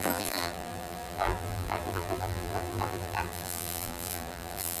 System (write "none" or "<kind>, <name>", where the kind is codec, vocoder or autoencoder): vocoder, BigVGAN v2